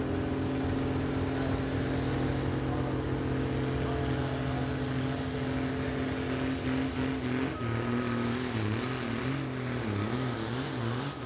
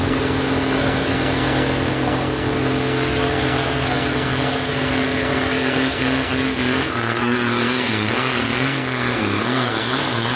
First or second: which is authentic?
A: first